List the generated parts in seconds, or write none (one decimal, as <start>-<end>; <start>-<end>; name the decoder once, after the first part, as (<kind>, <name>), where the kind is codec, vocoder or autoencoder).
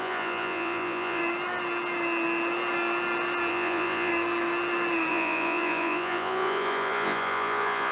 0.0-1.2 (vocoder, Vocos); 3.5-4.1; 5.1-7.9